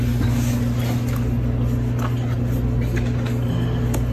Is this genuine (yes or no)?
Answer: yes